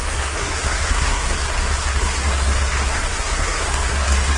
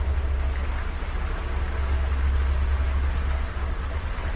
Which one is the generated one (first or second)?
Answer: first